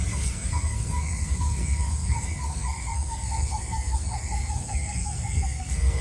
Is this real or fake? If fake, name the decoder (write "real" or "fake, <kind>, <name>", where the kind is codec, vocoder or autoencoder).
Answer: fake, codec, SNAC